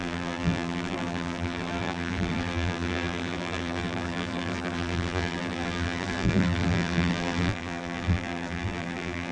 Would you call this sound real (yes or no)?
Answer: no